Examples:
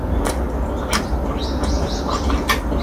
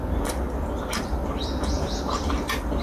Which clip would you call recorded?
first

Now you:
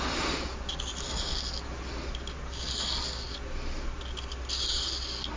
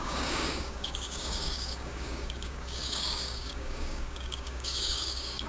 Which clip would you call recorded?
first